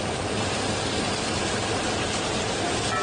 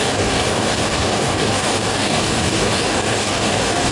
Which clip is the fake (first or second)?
second